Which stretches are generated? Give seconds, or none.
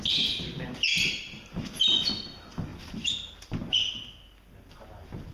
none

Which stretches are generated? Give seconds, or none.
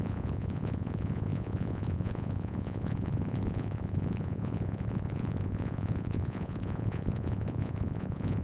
0.0-8.4 (vocoder, Vocos)